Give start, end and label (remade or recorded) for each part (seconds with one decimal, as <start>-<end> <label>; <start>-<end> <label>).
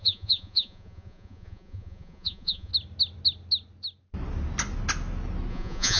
0.0-2.7 remade; 2.7-5.5 recorded; 5.5-6.0 remade